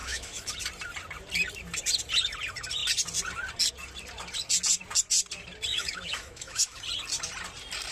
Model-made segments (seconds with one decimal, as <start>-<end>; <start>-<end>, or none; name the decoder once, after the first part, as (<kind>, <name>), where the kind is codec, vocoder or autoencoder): 0.0-0.5 (autoencoder, DAC-VAE); 5.7-6.8

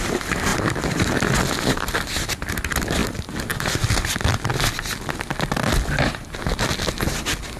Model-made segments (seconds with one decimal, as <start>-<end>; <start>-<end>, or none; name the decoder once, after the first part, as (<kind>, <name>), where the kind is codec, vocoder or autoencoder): none

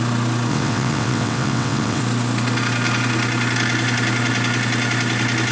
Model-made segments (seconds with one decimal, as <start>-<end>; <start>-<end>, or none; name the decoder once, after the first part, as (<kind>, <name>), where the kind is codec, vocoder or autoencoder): 0.5-2.0 (vocoder, WaveNeXt)

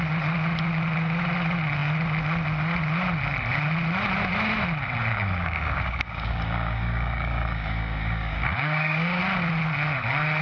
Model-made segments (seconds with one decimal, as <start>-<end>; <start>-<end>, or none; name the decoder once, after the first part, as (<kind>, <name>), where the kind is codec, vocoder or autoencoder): 5.1-9.2 (codec, DAC)

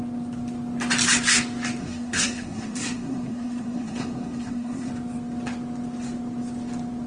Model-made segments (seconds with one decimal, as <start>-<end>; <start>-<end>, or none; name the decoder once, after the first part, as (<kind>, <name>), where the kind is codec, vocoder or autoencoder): 1.8-4.9 (codec, SNAC)

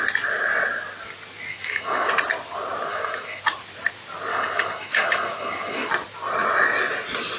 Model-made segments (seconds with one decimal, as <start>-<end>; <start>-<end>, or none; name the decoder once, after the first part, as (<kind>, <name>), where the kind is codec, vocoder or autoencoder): 1.5-2.1 (autoencoder, DAC-VAE); 2.9-3.4; 4.3-5.9

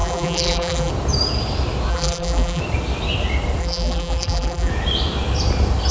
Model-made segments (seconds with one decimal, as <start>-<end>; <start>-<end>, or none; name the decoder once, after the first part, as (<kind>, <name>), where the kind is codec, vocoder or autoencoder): 0.0-0.9 (vocoder, BigVGAN v2); 1.9-2.6; 3.6-4.7